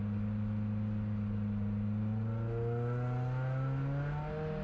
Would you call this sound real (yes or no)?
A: yes